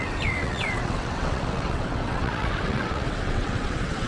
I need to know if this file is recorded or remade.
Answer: remade